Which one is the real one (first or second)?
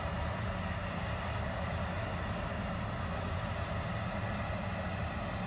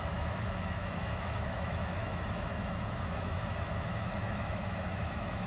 first